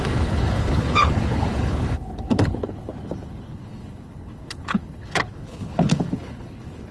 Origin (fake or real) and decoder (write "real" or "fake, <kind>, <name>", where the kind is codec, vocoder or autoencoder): fake, codec, HILCodec